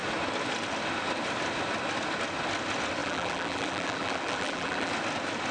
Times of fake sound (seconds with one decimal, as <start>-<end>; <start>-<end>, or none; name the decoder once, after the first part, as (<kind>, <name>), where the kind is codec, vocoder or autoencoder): 3.0-4.9 (vocoder, BigVGAN v2)